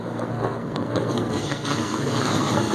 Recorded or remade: remade